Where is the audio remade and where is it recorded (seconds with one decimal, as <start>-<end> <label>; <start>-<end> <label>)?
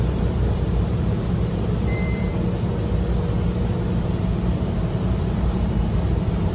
0.0-2.3 remade; 2.3-4.2 recorded; 4.2-6.5 remade